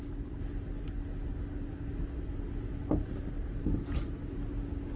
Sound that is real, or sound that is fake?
real